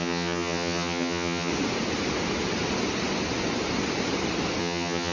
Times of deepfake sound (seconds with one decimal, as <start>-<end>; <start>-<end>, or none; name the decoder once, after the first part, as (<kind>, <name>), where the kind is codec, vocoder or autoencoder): 0.0-1.5 (vocoder, HiFi-GAN); 4.6-5.1